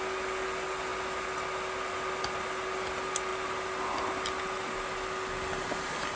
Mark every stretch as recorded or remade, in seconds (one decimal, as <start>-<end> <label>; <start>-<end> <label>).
0.0-6.2 recorded